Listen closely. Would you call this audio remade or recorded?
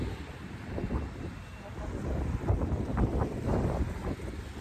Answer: recorded